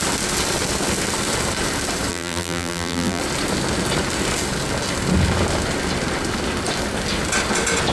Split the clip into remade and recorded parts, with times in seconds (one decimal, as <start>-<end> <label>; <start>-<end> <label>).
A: 0.0-2.1 recorded; 2.1-3.2 remade; 3.2-7.9 recorded